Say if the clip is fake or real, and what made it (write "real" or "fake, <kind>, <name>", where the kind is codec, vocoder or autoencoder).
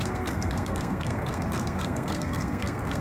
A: fake, codec, SNAC